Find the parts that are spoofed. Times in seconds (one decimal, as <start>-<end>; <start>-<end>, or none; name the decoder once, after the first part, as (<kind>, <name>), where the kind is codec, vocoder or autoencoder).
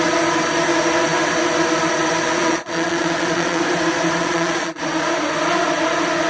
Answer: 2.3-3.6 (vocoder, Vocos); 4.2-4.8